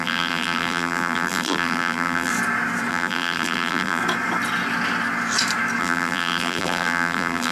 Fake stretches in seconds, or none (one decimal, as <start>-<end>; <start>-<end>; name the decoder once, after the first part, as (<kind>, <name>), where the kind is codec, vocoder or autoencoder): 0.0-2.3 (vocoder, BigVGAN v2); 2.9-4.0; 5.8-7.5